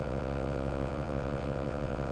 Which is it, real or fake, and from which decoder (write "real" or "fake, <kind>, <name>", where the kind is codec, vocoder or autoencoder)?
fake, vocoder, WaveNeXt